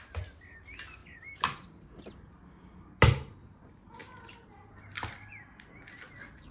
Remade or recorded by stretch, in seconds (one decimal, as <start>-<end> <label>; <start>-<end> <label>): 0.0-1.0 recorded; 1.0-2.3 remade; 2.3-6.5 recorded

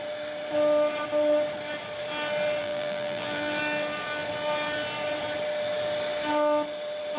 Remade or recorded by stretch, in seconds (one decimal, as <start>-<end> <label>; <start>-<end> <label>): 0.0-2.6 recorded; 2.6-3.6 remade; 3.6-7.2 recorded

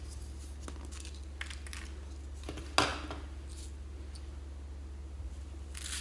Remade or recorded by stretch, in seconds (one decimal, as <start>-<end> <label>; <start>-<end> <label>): 0.0-6.0 recorded

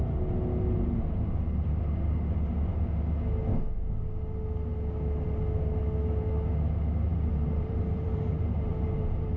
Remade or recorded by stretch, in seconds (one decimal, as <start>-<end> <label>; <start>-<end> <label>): 0.0-7.1 recorded; 7.1-9.4 remade